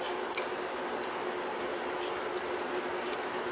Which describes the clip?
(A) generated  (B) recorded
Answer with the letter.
B